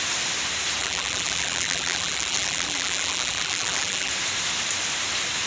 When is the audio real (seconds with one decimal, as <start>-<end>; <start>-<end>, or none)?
0.0-0.8; 4.1-5.5

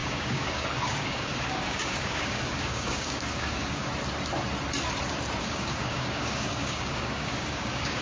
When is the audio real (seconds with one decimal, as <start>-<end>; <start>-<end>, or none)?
3.9-5.4

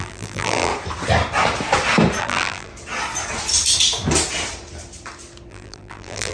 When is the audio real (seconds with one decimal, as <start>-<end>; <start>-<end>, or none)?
0.7-2.2; 2.7-5.5